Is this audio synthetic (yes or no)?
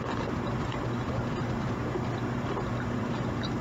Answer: no